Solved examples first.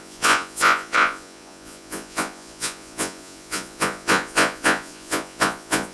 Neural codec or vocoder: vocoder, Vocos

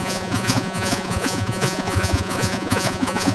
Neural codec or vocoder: vocoder, Vocos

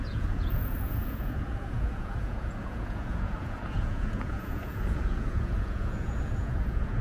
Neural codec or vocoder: vocoder, Vocos